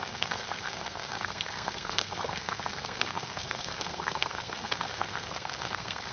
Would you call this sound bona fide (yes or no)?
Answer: no